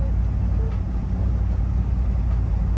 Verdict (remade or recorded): recorded